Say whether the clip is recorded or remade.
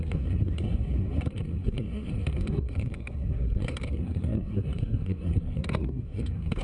remade